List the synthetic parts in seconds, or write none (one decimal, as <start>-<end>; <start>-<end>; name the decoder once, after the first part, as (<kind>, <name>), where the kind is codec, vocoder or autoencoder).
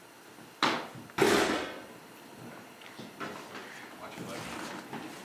none